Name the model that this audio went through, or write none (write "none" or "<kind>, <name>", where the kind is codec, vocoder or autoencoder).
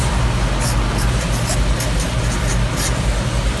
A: none